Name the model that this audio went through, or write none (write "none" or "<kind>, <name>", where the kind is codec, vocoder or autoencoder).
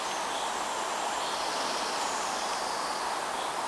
vocoder, BigVGAN v2